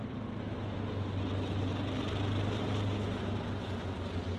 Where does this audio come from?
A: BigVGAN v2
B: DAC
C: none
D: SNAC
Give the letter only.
C